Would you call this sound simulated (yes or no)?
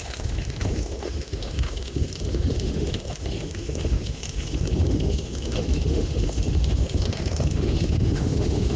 yes